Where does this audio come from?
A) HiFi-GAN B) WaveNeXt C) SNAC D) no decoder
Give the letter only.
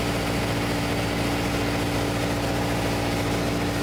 D